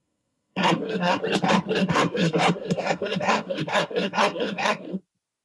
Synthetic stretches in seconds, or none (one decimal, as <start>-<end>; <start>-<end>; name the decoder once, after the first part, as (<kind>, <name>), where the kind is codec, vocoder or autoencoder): 0.0-1.2 (codec, SNAC); 1.8-5.0